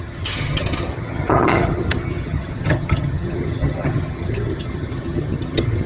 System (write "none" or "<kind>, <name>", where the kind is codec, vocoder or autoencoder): vocoder, HiFi-GAN